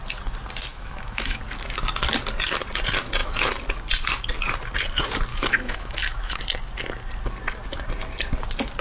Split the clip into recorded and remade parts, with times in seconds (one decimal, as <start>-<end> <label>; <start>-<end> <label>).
0.0-0.7 recorded; 0.7-1.4 remade; 1.4-5.3 recorded; 5.3-6.4 remade; 6.4-8.8 recorded